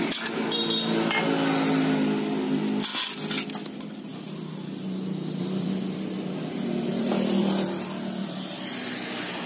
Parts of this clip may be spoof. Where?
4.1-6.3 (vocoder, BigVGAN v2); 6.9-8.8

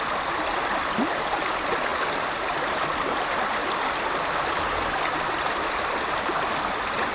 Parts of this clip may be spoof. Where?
none

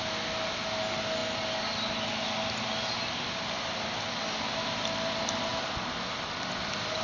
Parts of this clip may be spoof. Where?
none